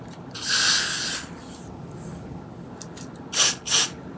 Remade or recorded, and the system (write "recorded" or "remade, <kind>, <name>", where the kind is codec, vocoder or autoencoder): recorded